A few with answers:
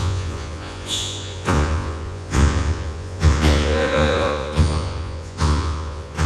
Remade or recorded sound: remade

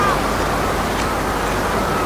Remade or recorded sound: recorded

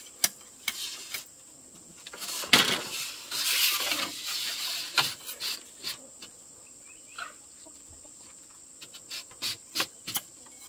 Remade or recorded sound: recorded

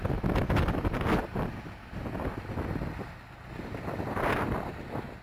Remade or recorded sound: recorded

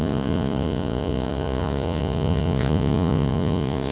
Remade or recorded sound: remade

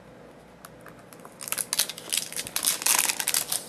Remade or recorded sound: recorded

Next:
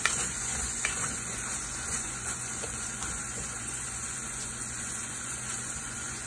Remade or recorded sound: remade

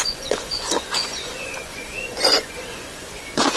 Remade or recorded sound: remade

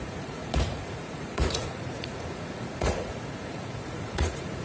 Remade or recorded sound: remade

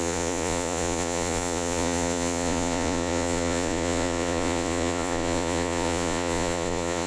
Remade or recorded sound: remade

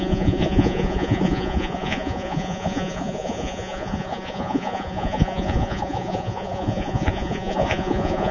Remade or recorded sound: remade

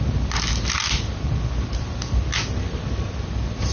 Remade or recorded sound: recorded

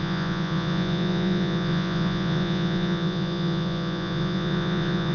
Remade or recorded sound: remade